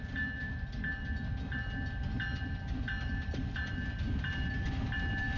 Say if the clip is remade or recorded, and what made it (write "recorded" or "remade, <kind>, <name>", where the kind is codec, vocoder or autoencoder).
recorded